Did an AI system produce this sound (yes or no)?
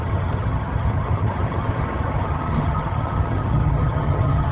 yes